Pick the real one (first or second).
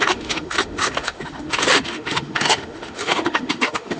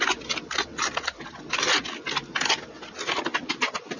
second